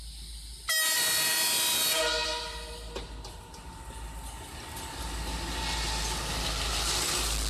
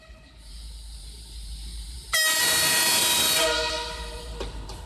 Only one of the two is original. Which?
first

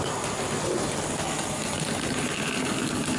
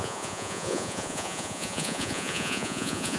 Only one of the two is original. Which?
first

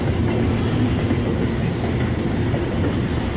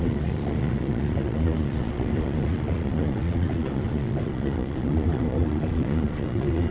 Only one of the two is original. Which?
first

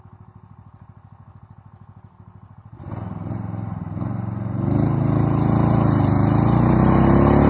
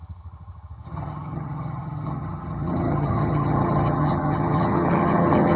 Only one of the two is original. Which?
first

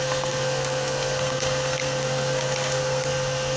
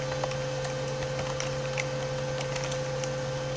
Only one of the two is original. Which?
second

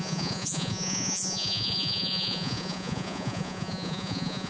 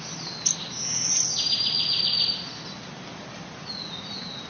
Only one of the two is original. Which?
second